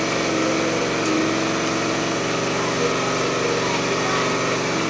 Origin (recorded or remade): recorded